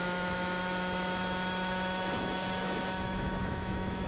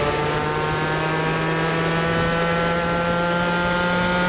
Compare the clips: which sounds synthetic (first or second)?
first